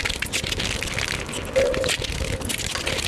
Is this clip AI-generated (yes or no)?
no